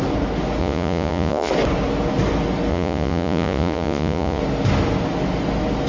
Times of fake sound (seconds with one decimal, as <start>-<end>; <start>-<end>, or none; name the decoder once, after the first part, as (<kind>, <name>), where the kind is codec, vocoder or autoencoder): 0.6-1.5 (vocoder, Vocos); 2.7-4.4